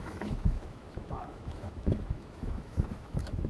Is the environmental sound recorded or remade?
remade